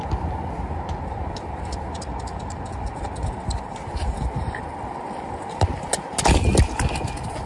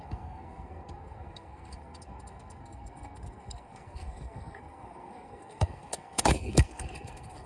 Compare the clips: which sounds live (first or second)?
first